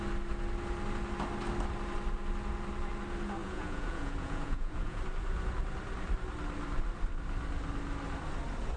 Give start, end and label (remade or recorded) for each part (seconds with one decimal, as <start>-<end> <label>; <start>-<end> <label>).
0.0-3.4 recorded; 3.4-5.0 remade; 5.0-8.8 recorded